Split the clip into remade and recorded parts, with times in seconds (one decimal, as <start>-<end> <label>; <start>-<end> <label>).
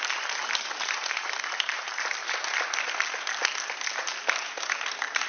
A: 0.0-2.2 remade; 2.2-4.8 recorded; 4.8-5.3 remade